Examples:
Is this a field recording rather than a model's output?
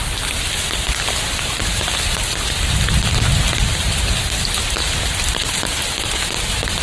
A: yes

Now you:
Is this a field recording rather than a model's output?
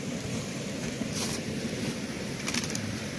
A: no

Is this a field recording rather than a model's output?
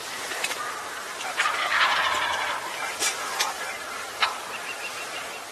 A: no